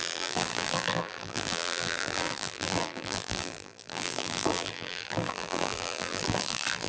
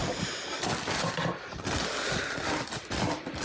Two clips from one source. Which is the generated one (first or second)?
first